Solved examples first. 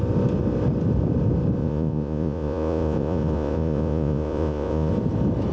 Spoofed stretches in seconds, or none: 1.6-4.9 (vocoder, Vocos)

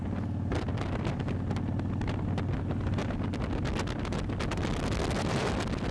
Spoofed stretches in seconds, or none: none

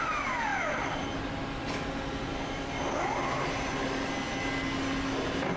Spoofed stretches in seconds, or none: none